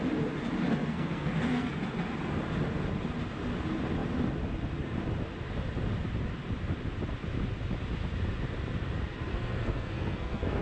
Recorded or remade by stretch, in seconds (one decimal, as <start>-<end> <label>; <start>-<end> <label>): 0.0-0.7 recorded; 0.7-1.7 remade; 1.7-9.3 recorded; 9.3-10.6 remade